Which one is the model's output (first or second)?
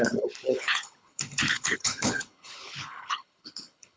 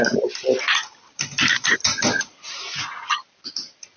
first